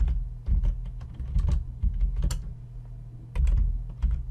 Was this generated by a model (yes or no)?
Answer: no